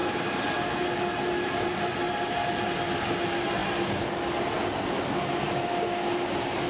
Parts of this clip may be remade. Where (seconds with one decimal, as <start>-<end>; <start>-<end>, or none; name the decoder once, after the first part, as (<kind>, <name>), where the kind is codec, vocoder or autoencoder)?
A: none

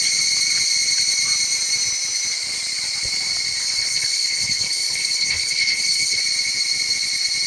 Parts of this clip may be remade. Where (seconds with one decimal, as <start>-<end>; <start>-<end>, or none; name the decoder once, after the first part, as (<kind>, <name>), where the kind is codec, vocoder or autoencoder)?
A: 3.6-6.2 (codec, HILCodec)

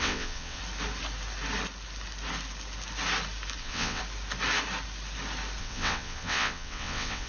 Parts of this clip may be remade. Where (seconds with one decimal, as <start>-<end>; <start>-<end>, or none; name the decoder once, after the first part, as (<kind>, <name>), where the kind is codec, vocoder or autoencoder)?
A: 0.0-0.6 (vocoder, WaveNeXt); 3.6-4.0; 5.6-7.3

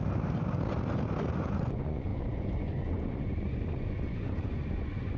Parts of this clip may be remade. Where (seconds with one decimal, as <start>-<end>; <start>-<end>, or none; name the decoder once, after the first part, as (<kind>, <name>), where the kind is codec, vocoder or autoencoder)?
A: 1.4-5.2 (vocoder, Vocos)

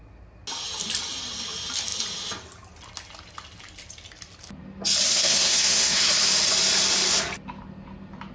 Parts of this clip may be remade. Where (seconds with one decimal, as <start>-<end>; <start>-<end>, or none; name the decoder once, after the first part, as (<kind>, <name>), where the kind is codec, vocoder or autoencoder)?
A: 5.1-6.1 (codec, SNAC)

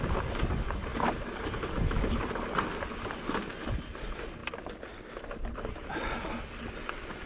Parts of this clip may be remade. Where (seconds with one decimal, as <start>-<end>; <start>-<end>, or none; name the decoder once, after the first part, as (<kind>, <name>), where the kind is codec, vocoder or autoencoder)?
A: none

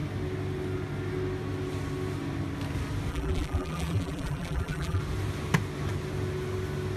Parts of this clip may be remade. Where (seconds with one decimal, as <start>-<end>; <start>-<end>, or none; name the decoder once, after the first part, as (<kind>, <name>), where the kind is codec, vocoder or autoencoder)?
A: 3.1-5.0 (vocoder, BigVGAN v2)

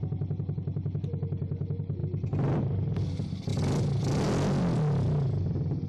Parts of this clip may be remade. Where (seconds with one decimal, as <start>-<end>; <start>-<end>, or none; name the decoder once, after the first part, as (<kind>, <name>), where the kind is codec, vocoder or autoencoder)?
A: 2.0-2.7 (vocoder, BigVGAN v2)